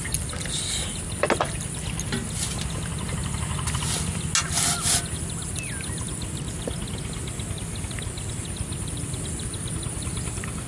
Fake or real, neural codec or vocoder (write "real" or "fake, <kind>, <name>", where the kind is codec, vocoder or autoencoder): real